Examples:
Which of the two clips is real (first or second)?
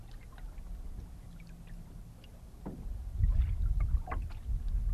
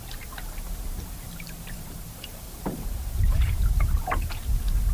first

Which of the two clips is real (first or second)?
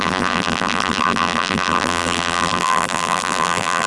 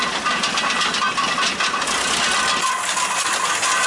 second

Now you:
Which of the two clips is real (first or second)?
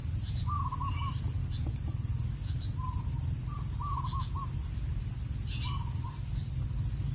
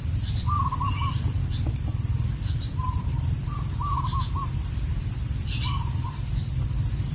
first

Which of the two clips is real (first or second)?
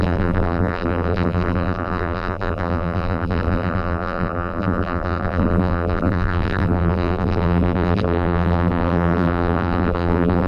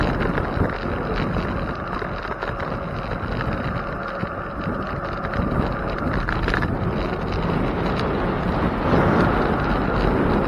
second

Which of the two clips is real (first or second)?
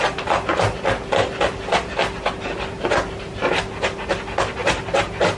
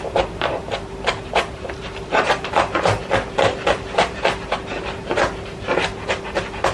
first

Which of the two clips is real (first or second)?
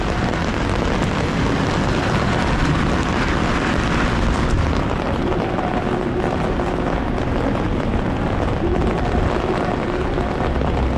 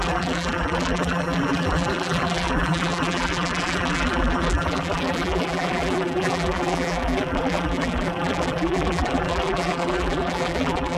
first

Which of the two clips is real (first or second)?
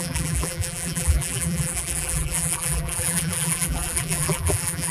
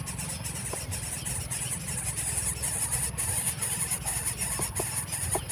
second